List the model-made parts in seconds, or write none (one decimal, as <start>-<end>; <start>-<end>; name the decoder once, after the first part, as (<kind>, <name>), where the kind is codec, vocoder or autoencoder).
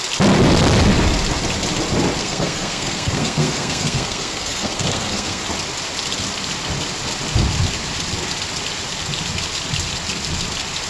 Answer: 2.2-5.4 (codec, SNAC)